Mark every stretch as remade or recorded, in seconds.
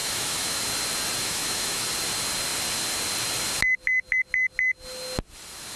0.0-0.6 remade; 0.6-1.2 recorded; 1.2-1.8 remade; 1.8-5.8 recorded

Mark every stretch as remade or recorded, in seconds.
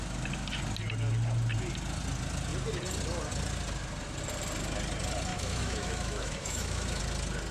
0.0-5.3 recorded; 5.3-7.0 remade; 7.0-7.5 recorded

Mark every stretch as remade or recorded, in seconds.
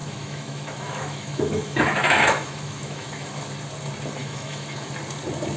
0.0-3.4 remade; 3.4-4.2 recorded; 4.2-4.9 remade; 4.9-5.6 recorded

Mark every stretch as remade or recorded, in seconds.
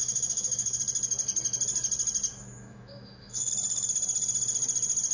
0.0-0.8 remade; 0.8-2.3 recorded; 2.3-3.5 remade; 3.5-5.1 recorded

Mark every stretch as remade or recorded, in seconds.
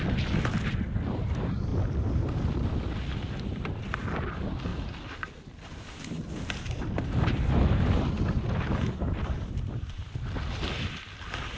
0.0-11.6 recorded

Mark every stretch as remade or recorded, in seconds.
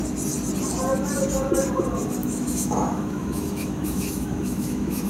0.0-2.2 recorded; 2.2-5.1 remade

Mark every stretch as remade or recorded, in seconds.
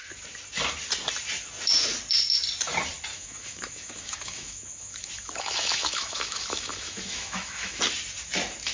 0.0-3.1 recorded; 3.1-7.8 remade; 7.8-8.7 recorded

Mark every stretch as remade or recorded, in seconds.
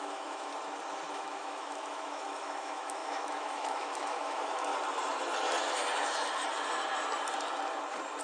0.0-0.5 remade; 0.5-1.1 recorded; 1.1-4.7 remade; 4.7-8.2 recorded